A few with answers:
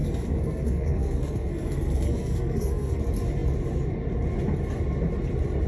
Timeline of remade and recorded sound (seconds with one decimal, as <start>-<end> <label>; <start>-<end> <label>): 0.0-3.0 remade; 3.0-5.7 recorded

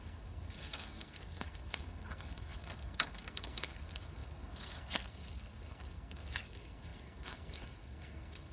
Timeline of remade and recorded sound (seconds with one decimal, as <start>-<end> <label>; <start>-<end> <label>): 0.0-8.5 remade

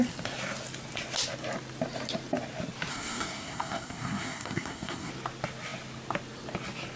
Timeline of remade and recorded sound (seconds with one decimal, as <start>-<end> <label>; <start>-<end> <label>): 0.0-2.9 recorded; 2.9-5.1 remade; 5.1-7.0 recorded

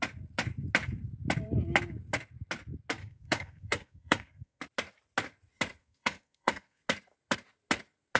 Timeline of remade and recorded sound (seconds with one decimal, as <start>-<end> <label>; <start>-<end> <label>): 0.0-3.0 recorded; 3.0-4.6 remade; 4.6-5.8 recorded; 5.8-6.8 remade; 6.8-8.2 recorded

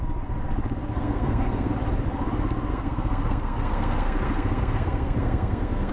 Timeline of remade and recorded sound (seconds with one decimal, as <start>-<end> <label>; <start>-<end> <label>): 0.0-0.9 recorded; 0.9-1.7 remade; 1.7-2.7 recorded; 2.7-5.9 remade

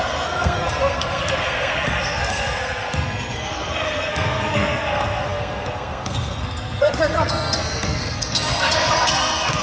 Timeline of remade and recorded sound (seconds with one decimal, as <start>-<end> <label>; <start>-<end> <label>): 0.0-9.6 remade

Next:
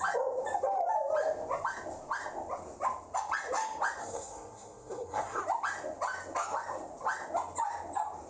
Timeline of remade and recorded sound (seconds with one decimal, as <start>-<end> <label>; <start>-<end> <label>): 0.0-4.0 recorded; 4.0-5.4 remade; 5.4-8.3 recorded